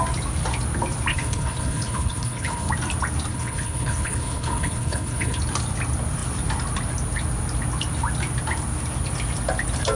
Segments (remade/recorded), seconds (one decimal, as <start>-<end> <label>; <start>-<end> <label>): 0.0-1.1 recorded; 1.1-2.7 remade; 2.7-3.3 recorded; 3.3-5.4 remade; 5.4-10.0 recorded